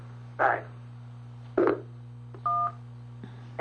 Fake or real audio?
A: real